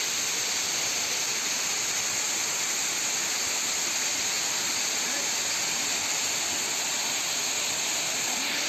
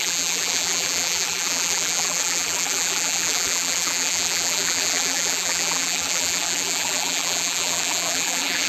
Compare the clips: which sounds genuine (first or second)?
first